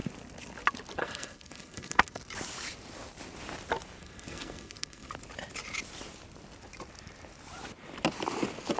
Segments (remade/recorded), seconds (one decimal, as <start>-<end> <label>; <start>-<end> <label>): 0.0-1.0 recorded; 1.0-2.2 remade; 2.2-4.0 recorded; 4.0-5.1 remade; 5.1-8.8 recorded